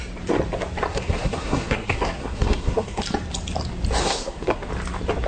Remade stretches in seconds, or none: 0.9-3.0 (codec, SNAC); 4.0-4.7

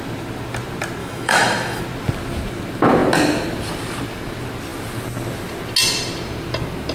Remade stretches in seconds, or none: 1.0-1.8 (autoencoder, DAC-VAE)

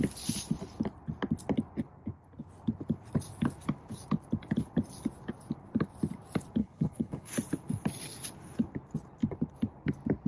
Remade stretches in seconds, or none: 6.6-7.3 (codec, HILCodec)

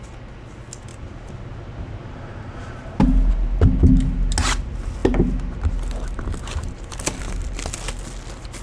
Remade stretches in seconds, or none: none